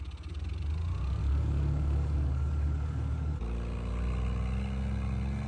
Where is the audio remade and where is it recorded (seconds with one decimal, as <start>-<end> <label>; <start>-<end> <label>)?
0.0-1.2 recorded; 1.2-3.4 remade; 3.4-5.5 recorded

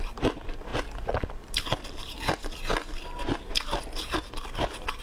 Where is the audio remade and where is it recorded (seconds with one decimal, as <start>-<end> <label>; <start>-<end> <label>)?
0.0-5.0 recorded

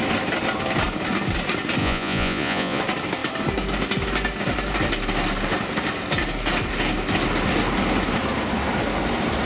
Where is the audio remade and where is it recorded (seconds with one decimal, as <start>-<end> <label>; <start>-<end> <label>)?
0.0-1.8 recorded; 1.8-2.8 remade; 2.8-9.5 recorded

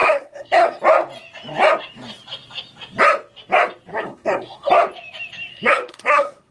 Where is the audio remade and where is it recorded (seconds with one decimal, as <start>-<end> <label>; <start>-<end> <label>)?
0.0-0.8 remade; 0.8-3.9 recorded; 3.9-4.7 remade; 4.7-5.5 recorded; 5.5-6.5 remade

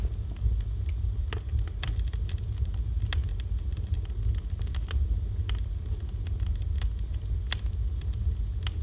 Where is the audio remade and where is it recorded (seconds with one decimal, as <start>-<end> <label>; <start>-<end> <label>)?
0.0-8.8 recorded

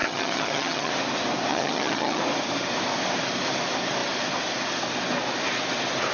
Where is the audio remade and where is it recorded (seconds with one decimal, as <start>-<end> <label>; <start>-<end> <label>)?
0.0-0.9 remade; 0.9-1.5 recorded; 1.5-2.2 remade; 2.2-6.1 recorded

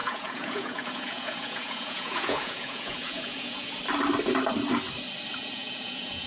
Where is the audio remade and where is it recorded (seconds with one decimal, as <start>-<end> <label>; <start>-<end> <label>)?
0.0-3.8 remade; 3.8-5.3 recorded; 5.3-6.3 remade

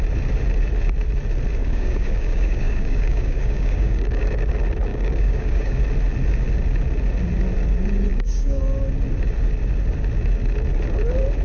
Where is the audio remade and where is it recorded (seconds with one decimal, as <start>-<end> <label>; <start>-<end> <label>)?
0.0-1.6 recorded; 1.6-4.5 remade; 4.5-4.9 recorded; 4.9-5.8 remade; 5.8-8.1 recorded; 8.1-8.6 remade; 8.6-11.4 recorded